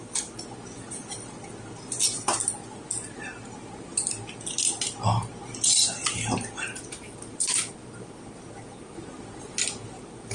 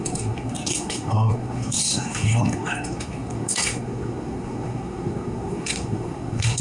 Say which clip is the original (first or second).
first